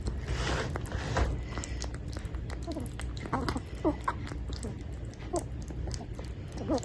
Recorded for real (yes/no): yes